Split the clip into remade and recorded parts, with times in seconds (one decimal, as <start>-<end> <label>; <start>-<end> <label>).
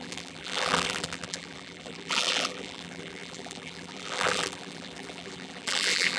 0.0-6.2 remade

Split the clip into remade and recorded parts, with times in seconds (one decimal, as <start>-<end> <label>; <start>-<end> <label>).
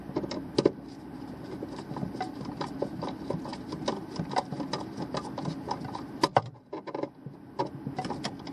0.0-2.0 recorded; 2.0-2.7 remade; 2.7-8.5 recorded